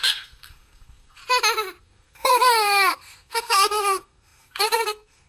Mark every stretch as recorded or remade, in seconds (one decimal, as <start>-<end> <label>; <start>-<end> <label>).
0.0-1.2 remade; 1.2-1.8 recorded; 1.8-5.3 remade